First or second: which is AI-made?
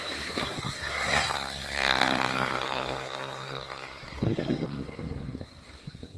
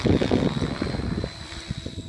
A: first